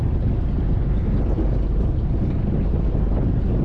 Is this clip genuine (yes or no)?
yes